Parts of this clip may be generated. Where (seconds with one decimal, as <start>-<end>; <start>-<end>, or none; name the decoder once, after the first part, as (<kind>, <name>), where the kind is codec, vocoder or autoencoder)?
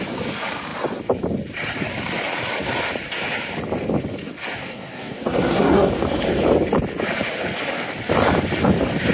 4.6-5.9 (codec, SNAC)